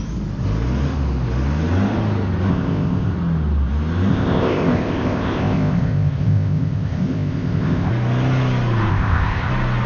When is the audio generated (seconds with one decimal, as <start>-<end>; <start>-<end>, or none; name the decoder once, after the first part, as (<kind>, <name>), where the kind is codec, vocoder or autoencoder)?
2.5-3.1 (codec, ZipCodec); 4.1-7.9; 8.9-9.5